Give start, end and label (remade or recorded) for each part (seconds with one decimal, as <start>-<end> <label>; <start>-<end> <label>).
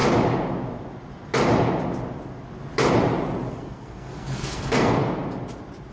0.0-3.5 recorded; 3.5-5.0 remade; 5.0-5.9 recorded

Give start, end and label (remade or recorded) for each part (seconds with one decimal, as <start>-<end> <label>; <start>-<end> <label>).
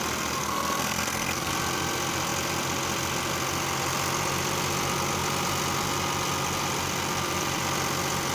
0.0-0.4 recorded; 0.4-1.5 remade; 1.5-8.3 recorded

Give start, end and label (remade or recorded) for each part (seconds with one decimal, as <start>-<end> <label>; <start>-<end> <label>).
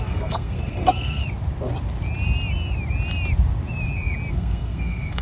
0.0-1.2 remade; 1.2-4.3 recorded; 4.3-5.2 remade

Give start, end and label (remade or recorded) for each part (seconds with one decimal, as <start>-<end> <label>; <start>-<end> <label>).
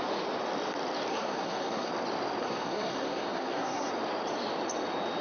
0.0-1.1 recorded; 1.1-1.9 remade; 1.9-2.4 recorded; 2.4-3.9 remade; 3.9-5.2 recorded